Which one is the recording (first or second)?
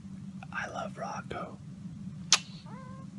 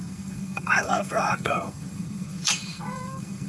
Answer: first